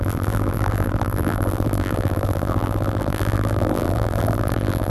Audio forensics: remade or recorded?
remade